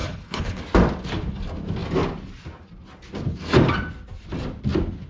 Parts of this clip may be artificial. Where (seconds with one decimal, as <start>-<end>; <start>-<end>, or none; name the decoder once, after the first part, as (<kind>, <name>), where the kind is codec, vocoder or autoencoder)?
0.0-0.6 (codec, HILCodec)